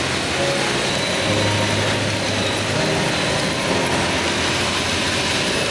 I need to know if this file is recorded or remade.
recorded